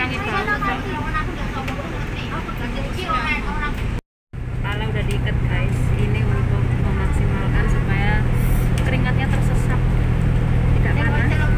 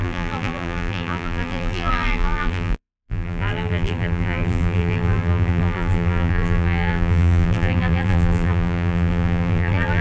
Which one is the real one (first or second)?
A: first